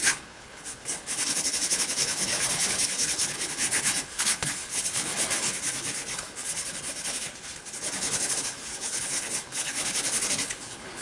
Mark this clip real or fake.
fake